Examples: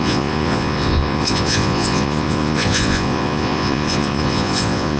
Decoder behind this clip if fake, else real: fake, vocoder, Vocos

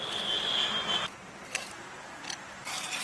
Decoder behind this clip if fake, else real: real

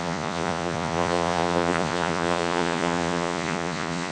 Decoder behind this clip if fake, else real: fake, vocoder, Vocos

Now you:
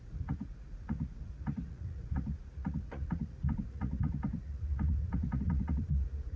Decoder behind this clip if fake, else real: fake, vocoder, Vocos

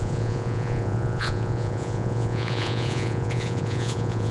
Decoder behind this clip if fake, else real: fake, vocoder, Vocos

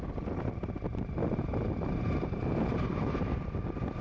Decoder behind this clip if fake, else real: real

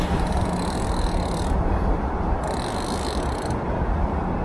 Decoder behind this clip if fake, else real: real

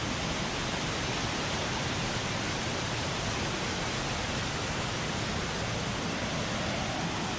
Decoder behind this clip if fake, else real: real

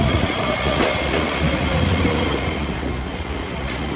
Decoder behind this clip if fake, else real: fake, vocoder, Vocos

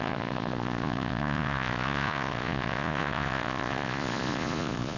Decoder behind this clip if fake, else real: fake, vocoder, Vocos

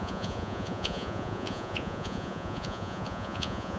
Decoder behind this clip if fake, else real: fake, vocoder, Vocos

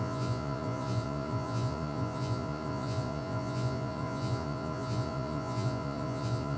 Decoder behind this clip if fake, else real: fake, vocoder, Vocos